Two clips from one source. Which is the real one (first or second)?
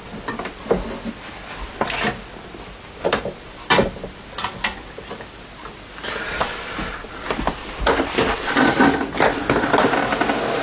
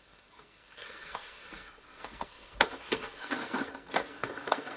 first